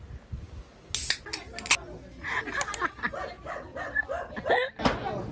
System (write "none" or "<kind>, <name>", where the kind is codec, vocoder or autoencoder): none